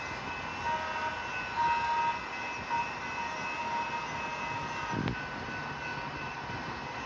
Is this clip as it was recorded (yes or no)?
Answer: yes